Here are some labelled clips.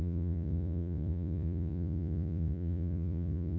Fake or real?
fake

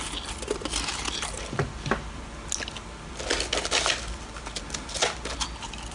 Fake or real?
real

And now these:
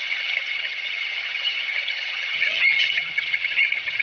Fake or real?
fake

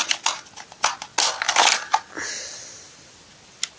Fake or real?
real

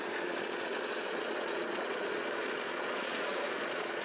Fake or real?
fake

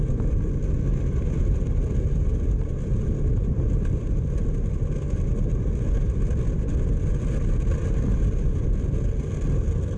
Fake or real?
real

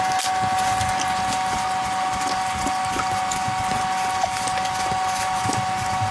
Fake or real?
real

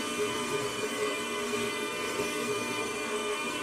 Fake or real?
fake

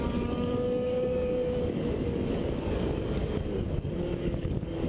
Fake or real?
fake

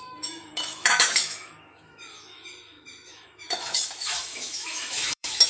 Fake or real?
fake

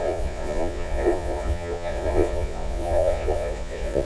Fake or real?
fake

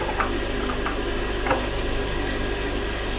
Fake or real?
real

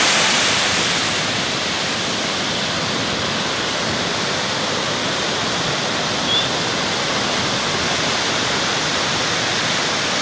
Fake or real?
real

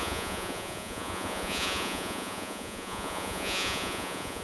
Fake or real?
fake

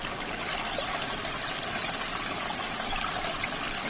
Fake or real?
real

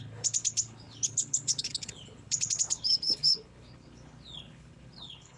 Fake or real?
fake